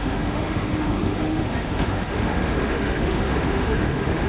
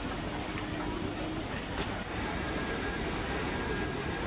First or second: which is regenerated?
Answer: first